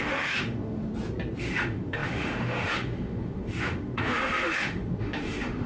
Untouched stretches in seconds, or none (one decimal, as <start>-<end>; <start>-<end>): 0.9-1.4